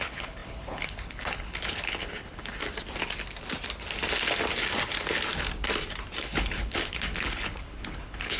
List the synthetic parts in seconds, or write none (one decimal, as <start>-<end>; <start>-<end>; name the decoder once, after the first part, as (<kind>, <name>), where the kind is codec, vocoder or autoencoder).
0.0-2.6 (codec, HILCodec); 6.2-8.4